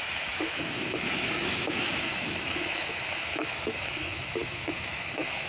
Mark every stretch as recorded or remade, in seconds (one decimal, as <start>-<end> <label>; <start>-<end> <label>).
0.0-5.5 remade